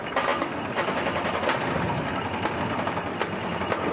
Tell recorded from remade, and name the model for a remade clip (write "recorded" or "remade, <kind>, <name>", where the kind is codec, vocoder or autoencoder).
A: recorded